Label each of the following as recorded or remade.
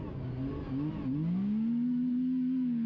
recorded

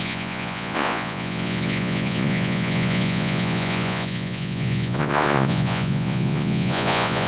remade